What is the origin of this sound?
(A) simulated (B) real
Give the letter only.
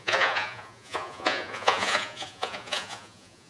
A